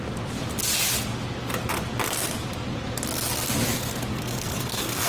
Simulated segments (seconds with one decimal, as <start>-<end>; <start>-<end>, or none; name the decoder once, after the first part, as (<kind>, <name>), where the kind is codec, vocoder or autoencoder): 4.1-5.1 (codec, SNAC)